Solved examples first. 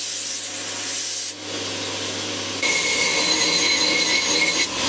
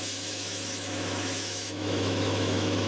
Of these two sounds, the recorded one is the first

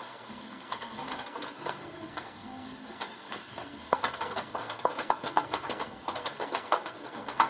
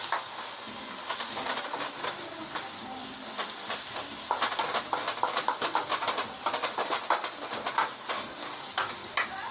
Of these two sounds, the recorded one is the second